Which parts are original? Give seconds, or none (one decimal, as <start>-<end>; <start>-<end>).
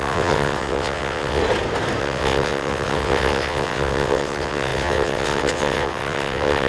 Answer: 1.4-2.0